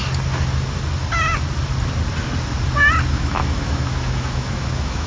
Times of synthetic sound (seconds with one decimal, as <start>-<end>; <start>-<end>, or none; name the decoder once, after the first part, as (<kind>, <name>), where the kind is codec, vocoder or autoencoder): 3.1-5.1 (autoencoder, DAC-VAE)